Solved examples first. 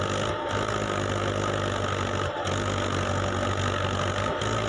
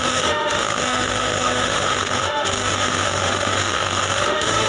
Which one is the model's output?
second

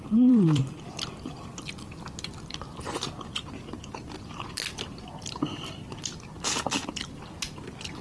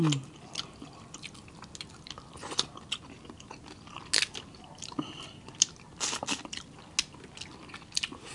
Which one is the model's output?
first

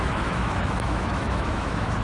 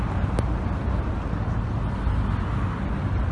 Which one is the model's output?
first